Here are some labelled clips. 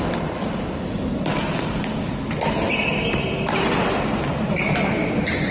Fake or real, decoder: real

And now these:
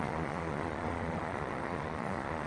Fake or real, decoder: fake, vocoder, Vocos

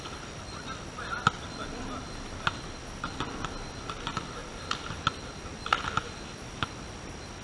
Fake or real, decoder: real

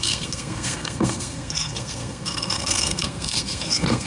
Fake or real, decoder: fake, codec, SNAC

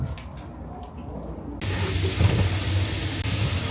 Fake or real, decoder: real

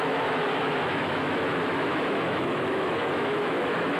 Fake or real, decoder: fake, autoencoder, DAC-VAE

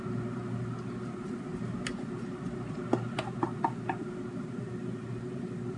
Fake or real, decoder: real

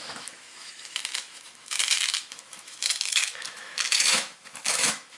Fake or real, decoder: fake, autoencoder, DAC-VAE